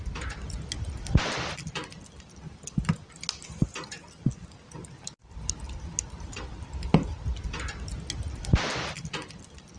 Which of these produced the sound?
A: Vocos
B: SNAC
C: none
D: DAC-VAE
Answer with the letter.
C